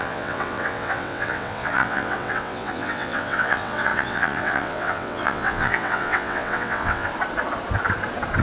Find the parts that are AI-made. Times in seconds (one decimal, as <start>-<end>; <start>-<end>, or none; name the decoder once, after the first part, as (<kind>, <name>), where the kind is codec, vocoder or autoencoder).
0.0-7.1 (vocoder, WaveNeXt)